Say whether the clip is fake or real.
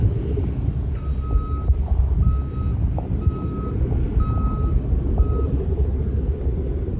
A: real